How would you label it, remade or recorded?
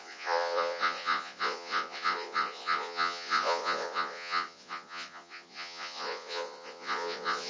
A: remade